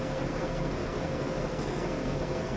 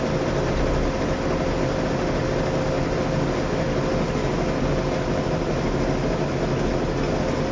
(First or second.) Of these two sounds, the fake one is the first